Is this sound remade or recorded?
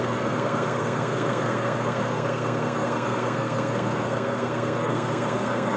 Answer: remade